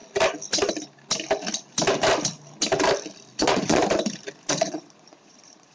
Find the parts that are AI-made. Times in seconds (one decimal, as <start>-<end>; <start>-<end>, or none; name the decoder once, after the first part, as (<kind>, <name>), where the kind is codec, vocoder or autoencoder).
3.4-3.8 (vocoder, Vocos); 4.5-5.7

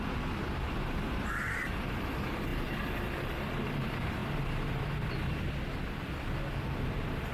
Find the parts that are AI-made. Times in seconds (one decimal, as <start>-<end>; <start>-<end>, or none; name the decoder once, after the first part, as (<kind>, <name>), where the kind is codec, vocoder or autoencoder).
none

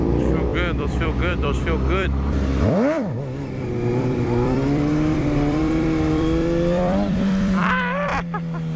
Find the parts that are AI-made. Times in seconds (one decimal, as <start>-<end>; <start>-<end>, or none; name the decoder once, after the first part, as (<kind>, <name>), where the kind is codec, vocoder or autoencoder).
0.0-8.1 (vocoder, BigVGAN v2)